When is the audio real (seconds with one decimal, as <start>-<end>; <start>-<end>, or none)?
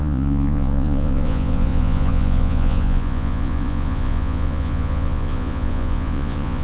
none